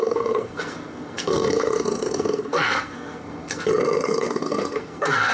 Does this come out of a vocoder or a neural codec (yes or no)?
yes